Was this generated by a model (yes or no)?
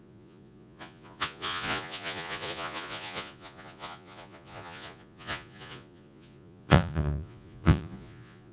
yes